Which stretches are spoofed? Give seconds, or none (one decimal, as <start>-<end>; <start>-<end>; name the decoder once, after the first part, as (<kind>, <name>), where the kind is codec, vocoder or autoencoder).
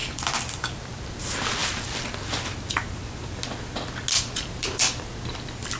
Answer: 0.0-1.6 (vocoder, BigVGAN v2); 4.2-5.8